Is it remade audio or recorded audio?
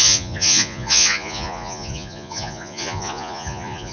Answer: remade